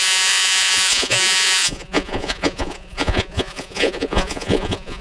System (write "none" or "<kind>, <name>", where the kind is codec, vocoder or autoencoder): vocoder, Vocos